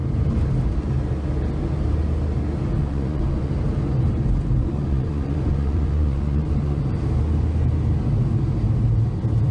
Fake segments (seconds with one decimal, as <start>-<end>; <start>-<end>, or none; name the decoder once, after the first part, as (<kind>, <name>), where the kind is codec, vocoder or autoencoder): 2.8-3.5 (vocoder, Vocos); 4.6-6.8